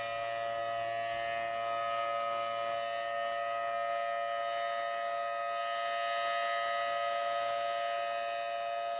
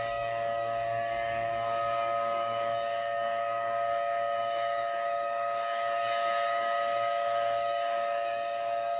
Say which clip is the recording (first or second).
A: first